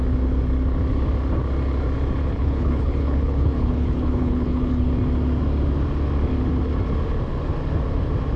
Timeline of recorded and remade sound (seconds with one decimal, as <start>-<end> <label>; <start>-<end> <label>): 0.0-2.2 recorded; 2.2-4.9 remade; 4.9-8.4 recorded